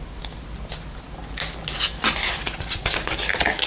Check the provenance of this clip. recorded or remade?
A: recorded